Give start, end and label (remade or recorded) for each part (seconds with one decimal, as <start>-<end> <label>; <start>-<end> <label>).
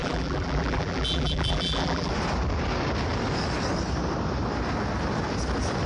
0.0-2.1 remade; 2.1-5.9 recorded